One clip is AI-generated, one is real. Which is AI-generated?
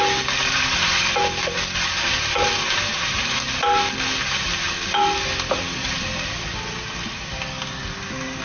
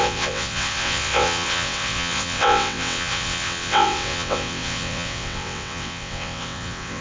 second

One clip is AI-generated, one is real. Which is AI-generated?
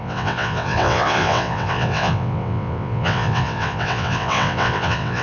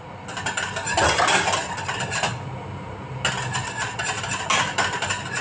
first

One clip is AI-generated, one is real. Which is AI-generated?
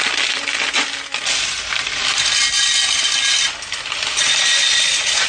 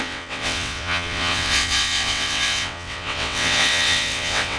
second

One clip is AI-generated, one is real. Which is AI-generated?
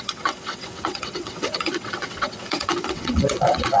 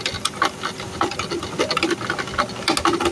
first